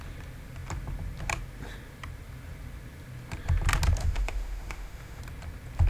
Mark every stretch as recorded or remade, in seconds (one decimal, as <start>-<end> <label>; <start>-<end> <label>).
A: 0.0-4.0 recorded; 4.0-5.2 remade; 5.2-5.9 recorded